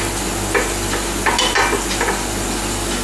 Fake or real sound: real